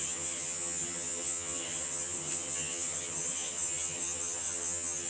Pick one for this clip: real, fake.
fake